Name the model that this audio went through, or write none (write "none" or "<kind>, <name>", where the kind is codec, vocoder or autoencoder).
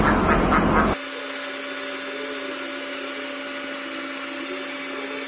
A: none